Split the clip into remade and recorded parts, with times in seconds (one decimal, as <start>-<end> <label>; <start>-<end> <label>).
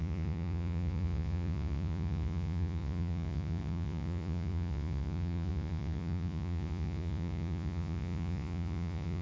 0.0-9.2 remade